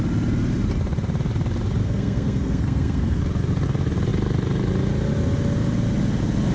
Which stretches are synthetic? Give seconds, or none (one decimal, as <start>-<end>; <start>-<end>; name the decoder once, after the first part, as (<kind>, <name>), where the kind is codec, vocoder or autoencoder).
1.8-3.2 (codec, SNAC)